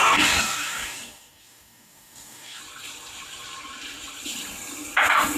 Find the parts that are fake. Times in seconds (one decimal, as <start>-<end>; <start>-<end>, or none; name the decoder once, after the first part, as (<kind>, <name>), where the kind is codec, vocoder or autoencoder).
0.0-2.6 (codec, DAC)